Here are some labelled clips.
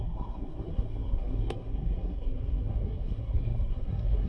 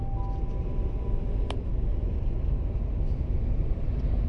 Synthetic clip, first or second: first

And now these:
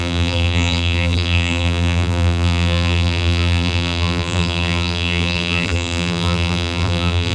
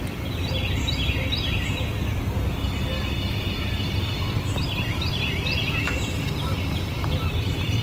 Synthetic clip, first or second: first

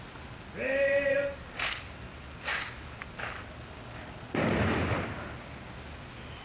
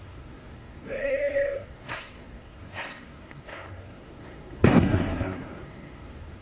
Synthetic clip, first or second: second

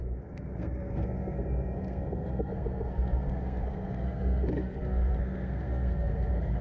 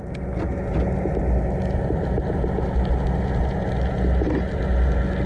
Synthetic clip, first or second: first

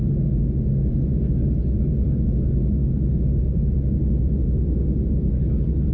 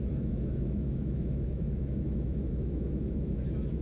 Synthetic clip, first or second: second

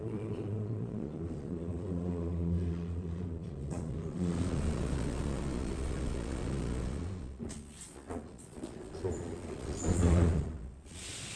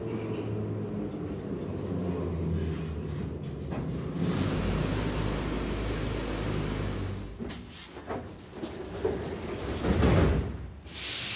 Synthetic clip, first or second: first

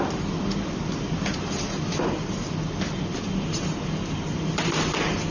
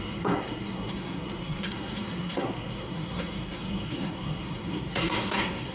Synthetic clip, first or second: second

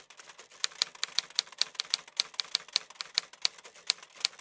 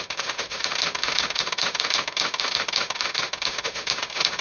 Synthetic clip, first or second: second